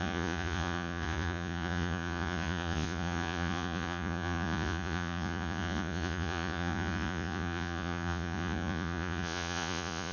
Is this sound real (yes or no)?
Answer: no